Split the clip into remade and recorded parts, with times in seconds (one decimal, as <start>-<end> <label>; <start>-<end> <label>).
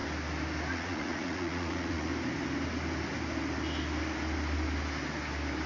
0.0-0.7 recorded; 0.7-2.1 remade; 2.1-5.7 recorded